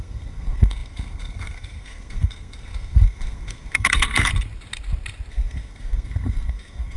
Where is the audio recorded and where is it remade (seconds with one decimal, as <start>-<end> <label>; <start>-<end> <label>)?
0.0-4.3 remade; 4.3-5.3 recorded; 5.3-7.0 remade